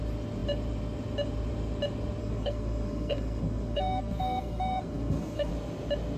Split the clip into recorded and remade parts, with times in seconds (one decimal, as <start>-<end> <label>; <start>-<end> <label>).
0.0-2.2 recorded; 2.2-5.5 remade; 5.5-6.2 recorded